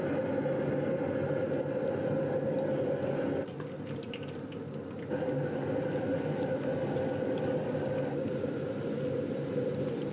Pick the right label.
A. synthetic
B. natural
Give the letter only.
B